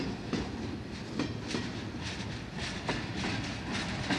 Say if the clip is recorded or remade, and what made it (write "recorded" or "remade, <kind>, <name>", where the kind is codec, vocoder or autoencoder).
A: recorded